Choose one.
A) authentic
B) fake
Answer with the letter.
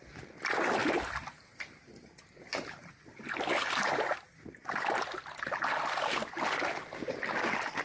A